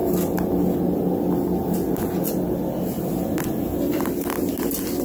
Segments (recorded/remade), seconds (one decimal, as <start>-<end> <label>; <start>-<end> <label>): 0.0-5.0 recorded